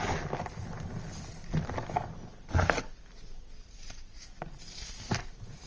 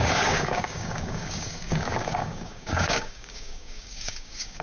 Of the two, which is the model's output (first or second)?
second